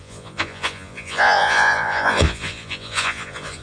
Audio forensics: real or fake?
fake